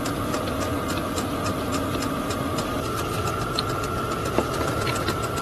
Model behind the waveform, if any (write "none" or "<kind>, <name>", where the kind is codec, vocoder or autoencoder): none